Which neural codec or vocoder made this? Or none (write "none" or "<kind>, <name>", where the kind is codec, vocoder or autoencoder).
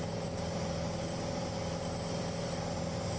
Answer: none